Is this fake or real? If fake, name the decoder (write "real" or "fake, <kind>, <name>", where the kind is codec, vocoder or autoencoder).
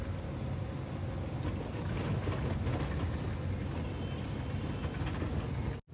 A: real